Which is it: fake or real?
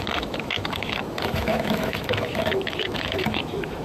fake